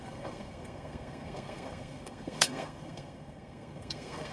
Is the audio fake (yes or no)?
yes